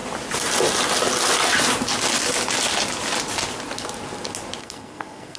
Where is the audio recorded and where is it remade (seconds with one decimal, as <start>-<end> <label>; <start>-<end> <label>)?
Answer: 0.0-4.6 recorded; 4.6-5.4 remade